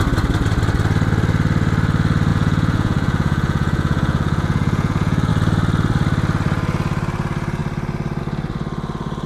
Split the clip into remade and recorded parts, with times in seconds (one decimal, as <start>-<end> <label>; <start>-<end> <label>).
0.0-2.3 recorded; 2.3-5.3 remade; 5.3-9.3 recorded